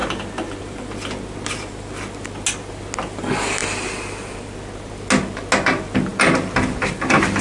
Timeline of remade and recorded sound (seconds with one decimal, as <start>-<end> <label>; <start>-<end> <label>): 0.0-7.4 recorded

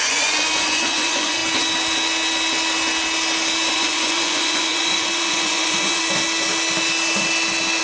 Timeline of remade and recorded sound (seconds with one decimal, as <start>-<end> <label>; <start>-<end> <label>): 0.0-1.4 remade; 1.4-3.7 recorded; 3.7-6.0 remade; 6.0-7.8 recorded

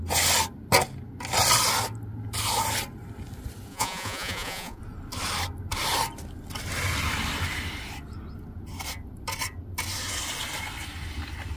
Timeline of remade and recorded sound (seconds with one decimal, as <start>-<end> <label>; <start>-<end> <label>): 0.0-3.7 recorded; 3.7-4.8 remade; 4.8-11.6 recorded

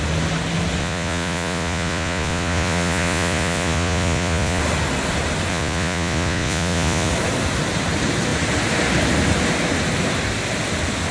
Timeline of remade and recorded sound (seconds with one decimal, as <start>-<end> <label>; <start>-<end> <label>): 0.0-0.8 recorded; 0.8-4.6 remade; 4.6-5.5 recorded; 5.5-7.1 remade; 7.1-11.1 recorded

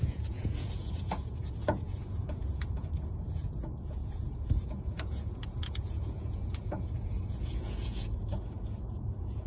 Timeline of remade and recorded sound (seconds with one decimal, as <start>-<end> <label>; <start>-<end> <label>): 0.0-9.5 remade

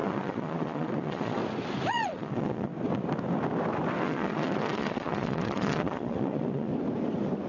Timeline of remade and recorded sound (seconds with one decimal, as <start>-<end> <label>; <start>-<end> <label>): 0.0-1.4 remade; 1.4-1.9 recorded; 1.9-2.7 remade; 2.7-4.0 recorded; 4.0-6.7 remade; 6.7-7.5 recorded